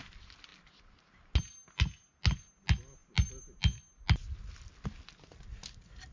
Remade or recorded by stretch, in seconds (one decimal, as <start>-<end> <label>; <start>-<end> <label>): 0.0-6.1 recorded